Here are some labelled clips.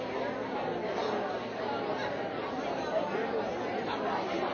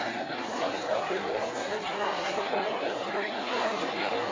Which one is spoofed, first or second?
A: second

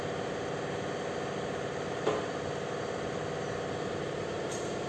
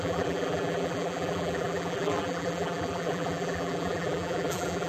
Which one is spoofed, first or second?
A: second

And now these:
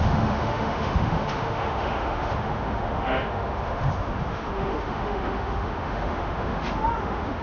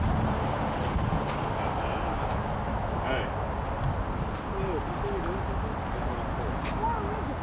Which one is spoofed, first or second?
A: first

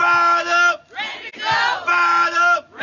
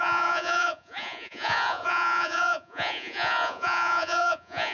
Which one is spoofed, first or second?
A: second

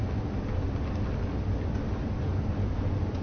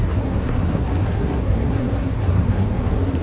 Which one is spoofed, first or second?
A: second